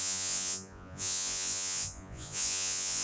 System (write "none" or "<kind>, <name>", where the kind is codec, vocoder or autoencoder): vocoder, Vocos